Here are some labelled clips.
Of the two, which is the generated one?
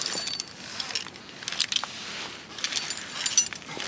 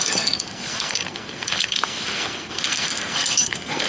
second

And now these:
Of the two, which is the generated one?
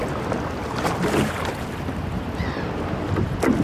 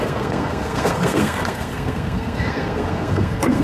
second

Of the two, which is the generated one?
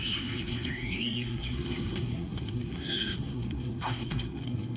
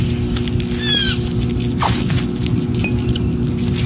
first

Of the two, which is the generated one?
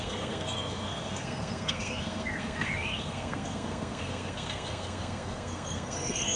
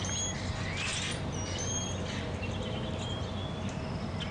first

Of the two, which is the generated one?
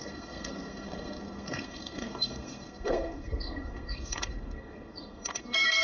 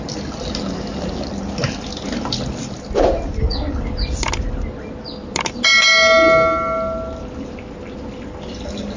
first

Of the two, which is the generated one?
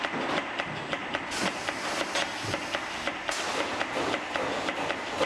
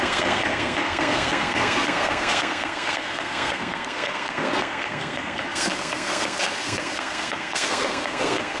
second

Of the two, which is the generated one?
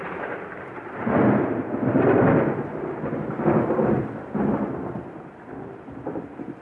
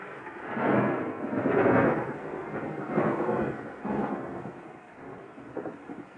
second